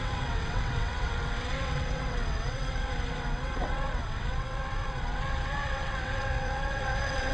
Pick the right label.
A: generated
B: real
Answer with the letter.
A